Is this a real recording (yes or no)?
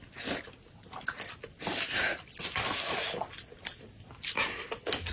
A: yes